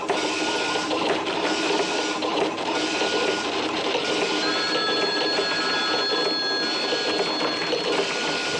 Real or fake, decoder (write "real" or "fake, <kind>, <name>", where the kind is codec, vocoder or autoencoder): real